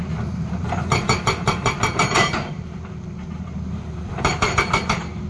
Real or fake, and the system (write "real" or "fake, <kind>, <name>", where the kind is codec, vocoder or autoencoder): fake, vocoder, BigVGAN v2